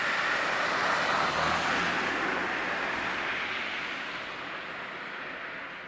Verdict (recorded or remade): recorded